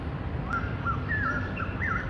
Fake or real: real